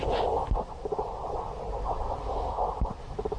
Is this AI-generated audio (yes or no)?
no